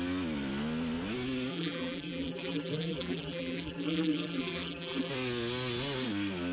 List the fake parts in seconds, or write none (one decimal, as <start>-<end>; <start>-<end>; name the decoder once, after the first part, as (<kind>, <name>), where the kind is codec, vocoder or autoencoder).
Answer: 1.5-5.1 (vocoder, BigVGAN v2)